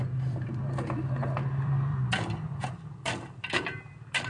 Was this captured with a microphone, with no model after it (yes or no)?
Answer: no